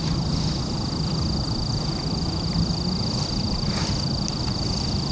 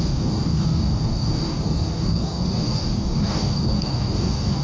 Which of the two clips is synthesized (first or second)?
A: second